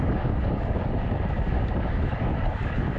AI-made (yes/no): yes